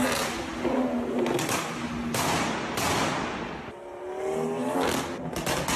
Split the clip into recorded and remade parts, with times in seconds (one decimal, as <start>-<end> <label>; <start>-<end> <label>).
0.0-5.8 recorded